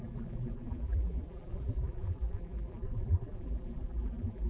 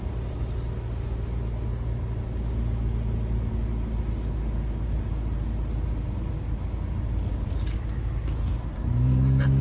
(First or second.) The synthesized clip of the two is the first